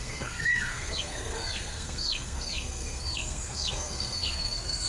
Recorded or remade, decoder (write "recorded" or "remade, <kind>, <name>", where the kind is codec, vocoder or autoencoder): remade, codec, SNAC